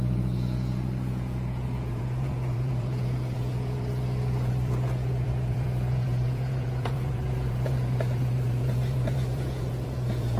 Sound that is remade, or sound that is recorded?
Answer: remade